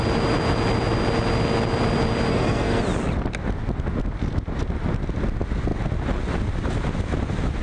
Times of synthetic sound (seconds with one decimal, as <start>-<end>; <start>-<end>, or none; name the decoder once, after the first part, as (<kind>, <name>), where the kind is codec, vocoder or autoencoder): 2.3-2.8 (codec, SNAC)